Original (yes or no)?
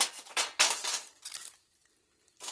yes